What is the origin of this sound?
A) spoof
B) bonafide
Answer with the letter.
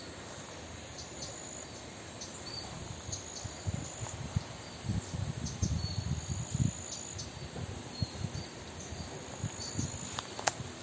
B